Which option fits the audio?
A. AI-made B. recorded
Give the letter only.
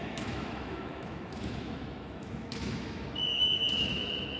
A